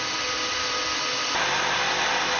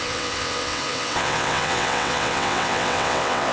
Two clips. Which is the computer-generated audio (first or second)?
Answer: second